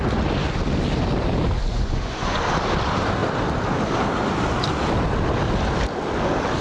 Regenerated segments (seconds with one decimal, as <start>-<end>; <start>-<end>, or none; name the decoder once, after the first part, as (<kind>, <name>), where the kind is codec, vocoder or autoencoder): 1.7-2.4 (vocoder, Vocos)